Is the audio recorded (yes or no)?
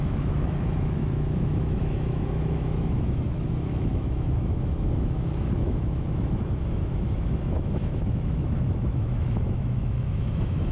no